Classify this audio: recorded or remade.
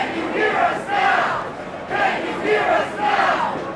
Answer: recorded